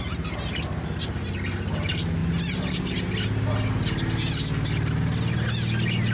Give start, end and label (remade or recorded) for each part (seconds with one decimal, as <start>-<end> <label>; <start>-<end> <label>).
0.0-6.1 recorded